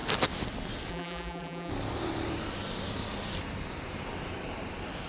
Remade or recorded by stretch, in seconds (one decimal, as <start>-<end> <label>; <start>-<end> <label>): 0.0-0.9 recorded; 0.9-1.7 remade; 1.7-5.1 recorded

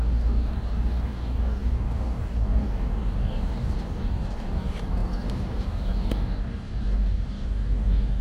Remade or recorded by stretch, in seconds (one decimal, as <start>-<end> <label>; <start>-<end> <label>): 0.0-8.2 remade